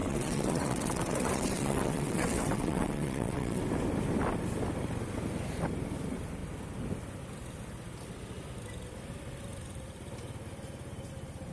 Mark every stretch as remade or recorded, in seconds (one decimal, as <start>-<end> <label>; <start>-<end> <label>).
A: 0.0-3.6 remade; 3.6-11.5 recorded